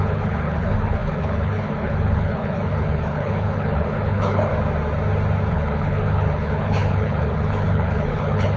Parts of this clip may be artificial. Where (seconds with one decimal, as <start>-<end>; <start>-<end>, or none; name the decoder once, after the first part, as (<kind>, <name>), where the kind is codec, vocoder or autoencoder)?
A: 0.0-4.5 (codec, HILCodec); 5.5-8.6